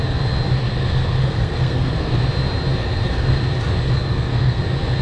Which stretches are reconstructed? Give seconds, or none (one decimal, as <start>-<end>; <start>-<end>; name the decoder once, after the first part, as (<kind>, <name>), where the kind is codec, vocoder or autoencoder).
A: 0.6-2.2 (codec, SNAC); 2.8-3.4; 3.8-4.6